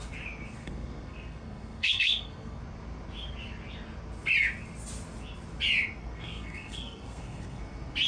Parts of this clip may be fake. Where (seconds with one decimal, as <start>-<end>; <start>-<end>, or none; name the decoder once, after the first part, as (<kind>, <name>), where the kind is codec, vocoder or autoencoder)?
0.6-2.6 (codec, SNAC); 6.0-7.6